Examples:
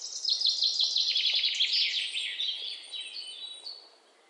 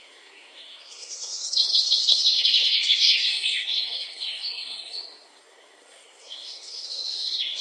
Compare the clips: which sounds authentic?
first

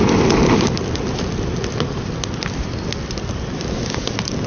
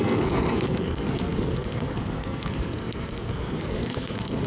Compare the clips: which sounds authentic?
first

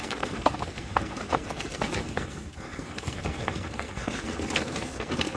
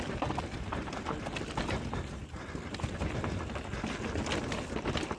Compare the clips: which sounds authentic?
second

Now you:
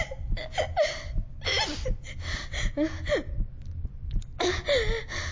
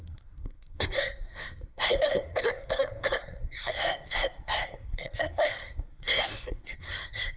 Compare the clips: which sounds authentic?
first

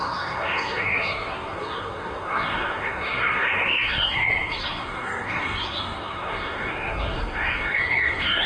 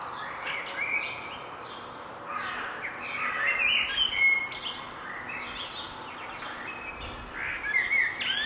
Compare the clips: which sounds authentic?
second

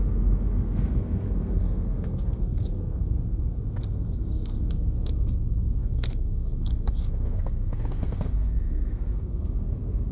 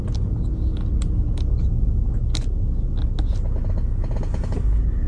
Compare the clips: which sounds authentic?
second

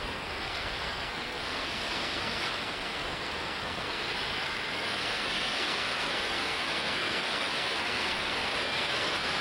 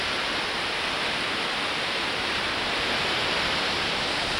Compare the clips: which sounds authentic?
second